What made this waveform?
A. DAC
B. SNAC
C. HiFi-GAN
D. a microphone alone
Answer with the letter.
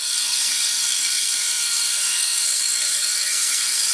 B